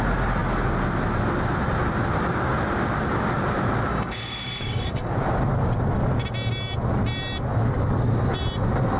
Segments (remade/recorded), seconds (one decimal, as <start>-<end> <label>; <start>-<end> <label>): 0.0-3.9 recorded; 3.9-5.1 remade; 5.1-9.0 recorded